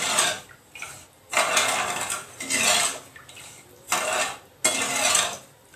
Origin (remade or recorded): recorded